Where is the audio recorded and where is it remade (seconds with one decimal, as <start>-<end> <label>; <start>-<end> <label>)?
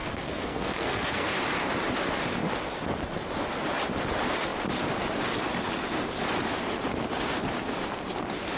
0.0-1.3 remade; 1.3-8.6 recorded